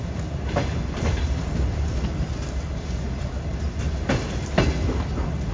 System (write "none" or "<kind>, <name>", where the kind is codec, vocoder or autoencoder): none